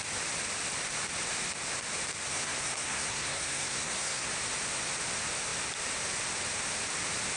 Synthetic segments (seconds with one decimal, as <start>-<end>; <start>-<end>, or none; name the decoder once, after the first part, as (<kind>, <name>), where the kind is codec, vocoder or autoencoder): 2.3-4.3 (codec, SNAC)